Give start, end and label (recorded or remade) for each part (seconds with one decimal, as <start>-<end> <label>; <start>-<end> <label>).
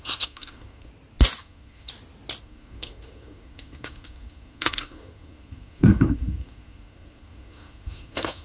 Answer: 0.0-0.9 remade; 0.9-1.4 recorded; 1.4-1.9 remade; 1.9-2.4 recorded; 2.4-8.4 remade